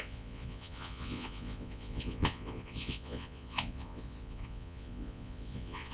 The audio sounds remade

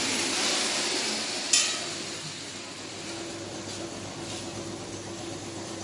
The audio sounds recorded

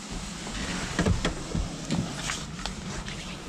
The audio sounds recorded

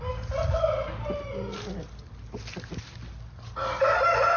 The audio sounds recorded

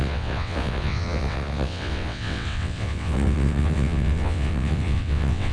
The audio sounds remade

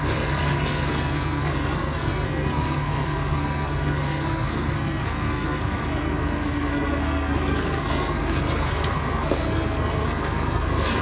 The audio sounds remade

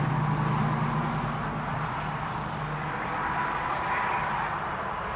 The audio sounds recorded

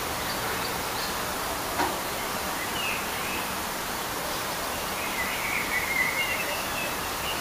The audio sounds remade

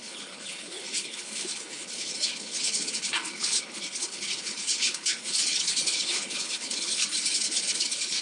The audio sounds remade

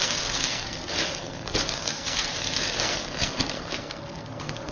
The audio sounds remade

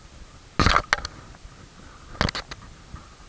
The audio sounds recorded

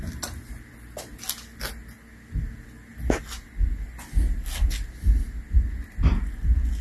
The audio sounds recorded